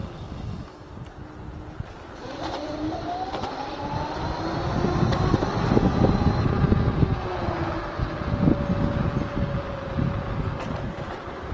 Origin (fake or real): real